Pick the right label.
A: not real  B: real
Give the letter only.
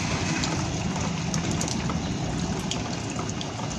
B